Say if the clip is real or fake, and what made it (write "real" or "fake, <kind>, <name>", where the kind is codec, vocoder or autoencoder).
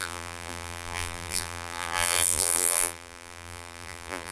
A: fake, vocoder, BigVGAN v2